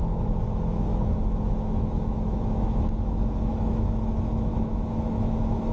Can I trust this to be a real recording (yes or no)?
no